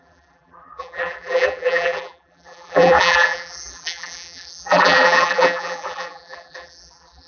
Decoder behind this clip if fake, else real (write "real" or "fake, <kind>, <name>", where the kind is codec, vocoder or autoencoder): fake, vocoder, BigVGAN v2